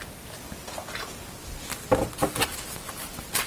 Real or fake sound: real